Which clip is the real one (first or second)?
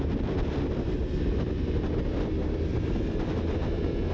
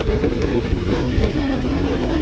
first